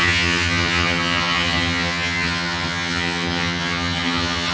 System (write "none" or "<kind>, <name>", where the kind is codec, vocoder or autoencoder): vocoder, HiFi-GAN